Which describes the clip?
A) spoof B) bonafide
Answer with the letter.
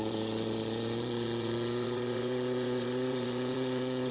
A